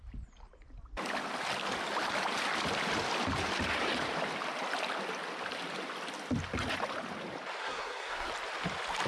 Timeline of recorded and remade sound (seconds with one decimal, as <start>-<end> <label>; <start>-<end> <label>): 0.0-7.6 recorded; 7.6-8.3 remade; 8.3-9.1 recorded